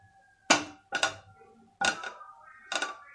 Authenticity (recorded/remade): recorded